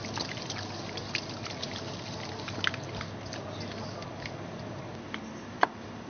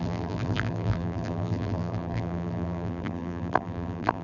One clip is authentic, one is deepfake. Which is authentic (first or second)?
first